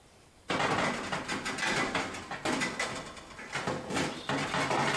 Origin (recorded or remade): recorded